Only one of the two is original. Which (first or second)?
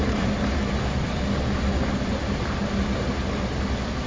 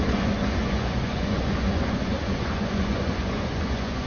first